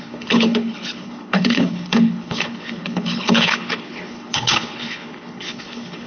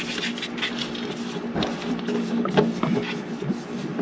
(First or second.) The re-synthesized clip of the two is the first